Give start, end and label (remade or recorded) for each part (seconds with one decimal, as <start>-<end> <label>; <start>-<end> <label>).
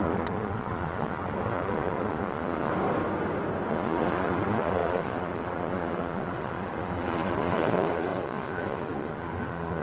0.0-2.7 remade; 2.7-3.7 recorded; 3.7-9.8 remade